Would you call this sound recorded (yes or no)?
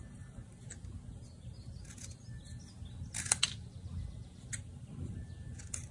yes